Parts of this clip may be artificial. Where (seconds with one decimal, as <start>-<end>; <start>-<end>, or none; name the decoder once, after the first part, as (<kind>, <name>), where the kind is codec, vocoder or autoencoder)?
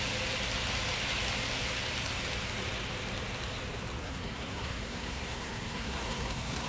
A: 4.0-6.7 (codec, SNAC)